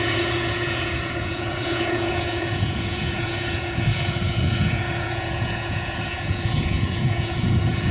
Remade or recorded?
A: remade